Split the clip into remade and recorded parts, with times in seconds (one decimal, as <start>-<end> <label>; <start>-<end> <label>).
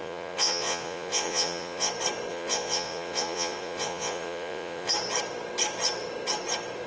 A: 0.0-1.9 remade; 1.9-2.3 recorded; 2.3-4.9 remade; 4.9-6.9 recorded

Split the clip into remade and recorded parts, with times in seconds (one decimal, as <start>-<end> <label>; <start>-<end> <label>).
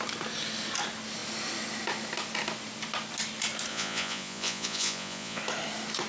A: 0.0-3.7 recorded; 3.7-5.4 remade; 5.4-6.1 recorded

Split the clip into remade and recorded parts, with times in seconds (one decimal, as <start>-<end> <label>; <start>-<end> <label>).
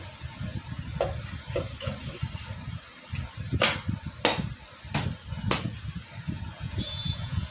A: 0.0-6.5 recorded; 6.5-7.5 remade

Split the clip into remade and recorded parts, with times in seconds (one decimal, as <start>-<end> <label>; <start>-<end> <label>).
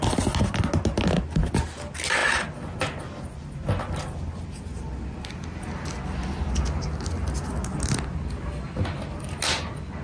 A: 0.0-10.0 recorded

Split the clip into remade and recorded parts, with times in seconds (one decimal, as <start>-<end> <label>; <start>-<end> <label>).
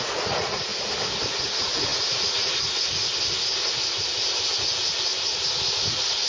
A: 0.0-0.7 remade; 0.7-1.4 recorded; 1.4-3.0 remade; 3.0-4.5 recorded; 4.5-5.1 remade; 5.1-5.8 recorded; 5.8-6.3 remade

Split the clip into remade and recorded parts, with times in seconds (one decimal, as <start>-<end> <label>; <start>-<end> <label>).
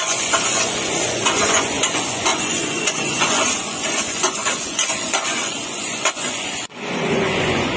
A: 0.0-7.8 remade